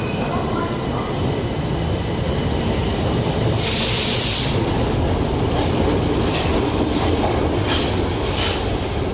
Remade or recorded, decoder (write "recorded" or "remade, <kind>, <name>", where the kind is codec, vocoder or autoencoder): recorded